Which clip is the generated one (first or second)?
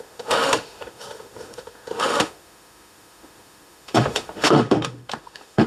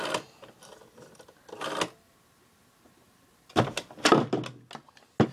first